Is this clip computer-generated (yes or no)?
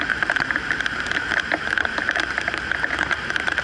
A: yes